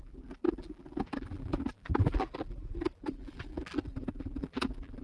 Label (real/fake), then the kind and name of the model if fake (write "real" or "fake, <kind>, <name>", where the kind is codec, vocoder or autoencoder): fake, vocoder, BigVGAN v2